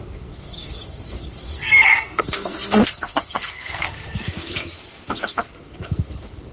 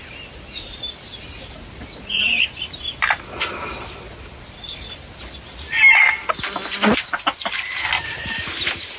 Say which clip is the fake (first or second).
first